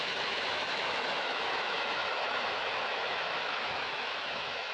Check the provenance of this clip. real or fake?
fake